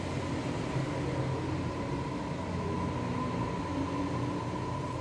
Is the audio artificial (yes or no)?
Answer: no